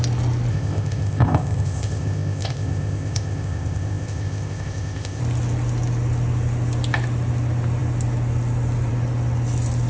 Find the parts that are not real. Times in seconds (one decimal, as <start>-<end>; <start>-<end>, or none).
0.5-5.2